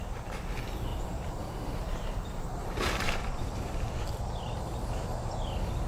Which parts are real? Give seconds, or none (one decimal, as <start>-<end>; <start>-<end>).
0.0-0.9; 4.4-5.9